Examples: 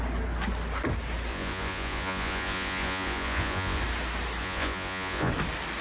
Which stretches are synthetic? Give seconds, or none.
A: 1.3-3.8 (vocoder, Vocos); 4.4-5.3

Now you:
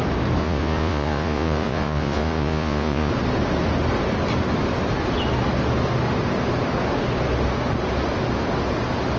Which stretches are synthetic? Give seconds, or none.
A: 0.4-3.1 (vocoder, Vocos)